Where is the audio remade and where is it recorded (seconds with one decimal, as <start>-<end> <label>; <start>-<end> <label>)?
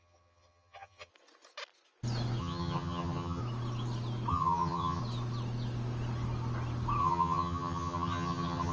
0.0-1.1 remade; 1.1-2.4 recorded; 2.4-3.4 remade; 3.4-4.3 recorded; 4.3-5.0 remade; 5.0-7.0 recorded; 7.0-8.7 remade